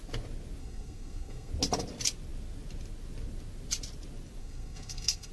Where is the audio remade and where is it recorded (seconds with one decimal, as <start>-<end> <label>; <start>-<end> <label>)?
0.0-0.6 recorded; 0.6-1.5 remade; 1.5-4.4 recorded; 4.4-5.3 remade